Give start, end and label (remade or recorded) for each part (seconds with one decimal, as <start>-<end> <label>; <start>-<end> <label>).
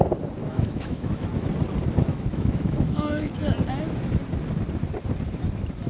0.0-0.4 recorded; 0.4-1.5 remade; 1.5-2.1 recorded; 2.1-3.3 remade; 3.3-5.9 recorded